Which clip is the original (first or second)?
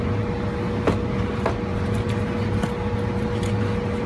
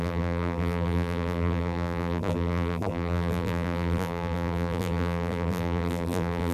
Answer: first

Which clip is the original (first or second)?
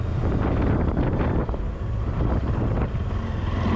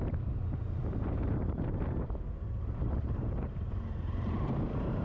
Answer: first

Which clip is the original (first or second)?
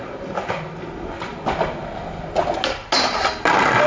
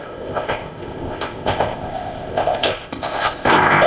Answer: first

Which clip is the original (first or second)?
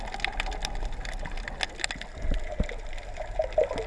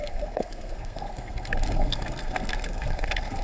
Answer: first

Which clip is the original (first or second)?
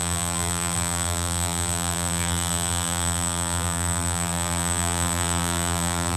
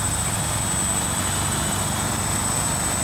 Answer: second